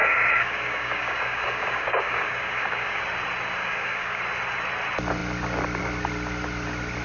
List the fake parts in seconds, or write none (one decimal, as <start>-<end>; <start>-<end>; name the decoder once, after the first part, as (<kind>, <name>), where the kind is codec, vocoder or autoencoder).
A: 0.0-3.0 (codec, DAC); 3.6-4.2